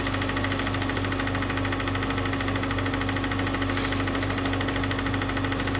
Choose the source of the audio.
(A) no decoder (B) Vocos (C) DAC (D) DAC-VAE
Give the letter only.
A